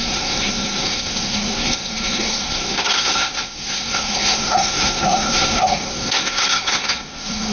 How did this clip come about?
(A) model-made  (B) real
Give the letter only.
A